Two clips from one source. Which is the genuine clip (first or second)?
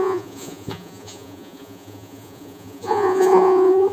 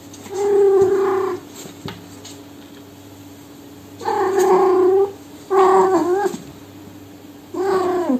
second